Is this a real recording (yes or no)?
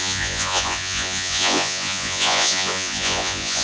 no